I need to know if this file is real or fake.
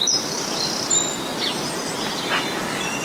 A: real